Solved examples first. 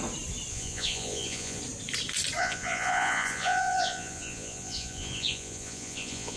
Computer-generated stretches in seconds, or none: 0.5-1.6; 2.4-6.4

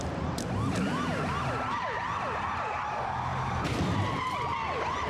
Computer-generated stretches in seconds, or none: 0.0-5.1